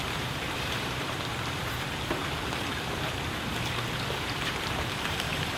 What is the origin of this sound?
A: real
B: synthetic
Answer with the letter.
B